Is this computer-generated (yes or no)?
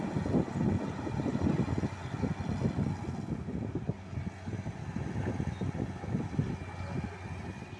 no